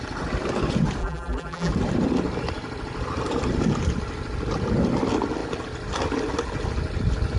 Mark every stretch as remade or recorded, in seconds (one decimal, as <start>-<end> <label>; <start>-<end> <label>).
0.0-1.0 recorded; 1.0-1.7 remade; 1.7-7.4 recorded